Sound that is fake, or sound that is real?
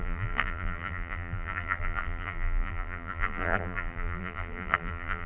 fake